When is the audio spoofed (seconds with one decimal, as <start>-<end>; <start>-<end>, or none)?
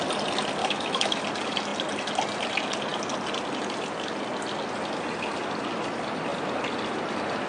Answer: 0.6-1.2